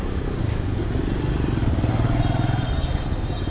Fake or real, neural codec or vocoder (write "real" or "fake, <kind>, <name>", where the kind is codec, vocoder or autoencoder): real